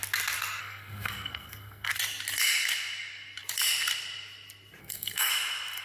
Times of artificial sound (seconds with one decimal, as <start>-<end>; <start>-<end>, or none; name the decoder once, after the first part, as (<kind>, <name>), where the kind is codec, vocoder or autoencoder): 0.6-1.9 (codec, SNAC); 4.8-5.3